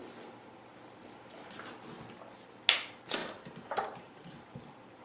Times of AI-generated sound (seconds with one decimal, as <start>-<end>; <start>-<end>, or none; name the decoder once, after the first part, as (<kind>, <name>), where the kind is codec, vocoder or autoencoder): 3.2-5.0 (vocoder, BigVGAN v2)